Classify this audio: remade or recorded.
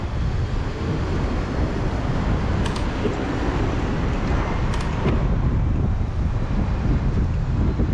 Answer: recorded